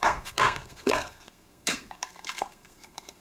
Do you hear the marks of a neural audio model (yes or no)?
yes